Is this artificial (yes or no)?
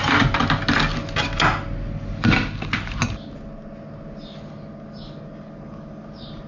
no